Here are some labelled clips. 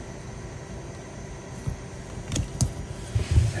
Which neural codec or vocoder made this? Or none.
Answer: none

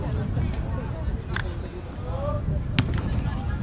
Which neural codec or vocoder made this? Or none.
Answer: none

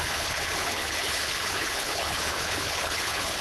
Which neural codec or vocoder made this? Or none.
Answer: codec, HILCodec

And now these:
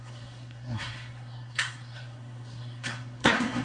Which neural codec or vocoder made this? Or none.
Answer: codec, SNAC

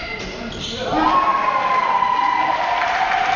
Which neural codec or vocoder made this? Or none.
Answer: vocoder, BigVGAN v2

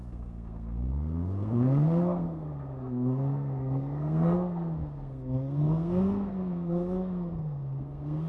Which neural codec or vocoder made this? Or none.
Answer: codec, SNAC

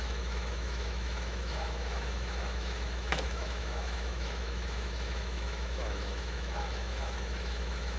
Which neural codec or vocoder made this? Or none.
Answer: autoencoder, DAC-VAE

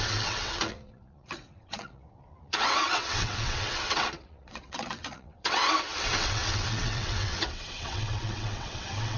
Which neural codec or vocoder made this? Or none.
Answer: vocoder, WaveNeXt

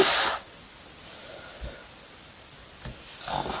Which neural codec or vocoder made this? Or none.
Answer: none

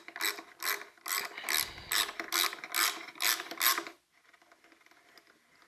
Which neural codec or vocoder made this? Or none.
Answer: none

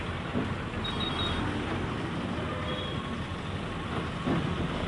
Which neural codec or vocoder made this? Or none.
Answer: none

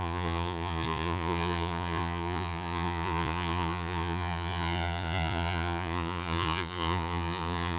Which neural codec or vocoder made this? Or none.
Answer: vocoder, Vocos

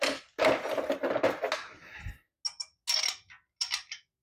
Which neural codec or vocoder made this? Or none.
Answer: none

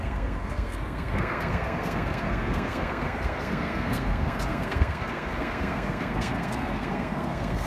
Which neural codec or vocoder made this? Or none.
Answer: codec, SNAC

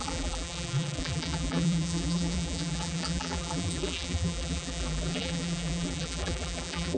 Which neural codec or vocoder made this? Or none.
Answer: vocoder, BigVGAN v2